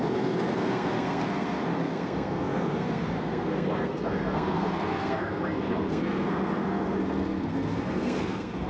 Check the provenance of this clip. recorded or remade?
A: remade